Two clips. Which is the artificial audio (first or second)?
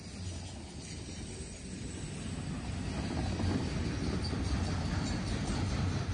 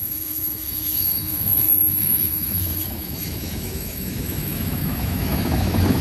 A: second